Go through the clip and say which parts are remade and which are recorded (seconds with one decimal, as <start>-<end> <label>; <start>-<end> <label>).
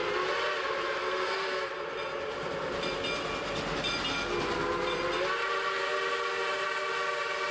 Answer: 0.0-1.0 recorded; 1.0-1.7 remade; 1.7-7.5 recorded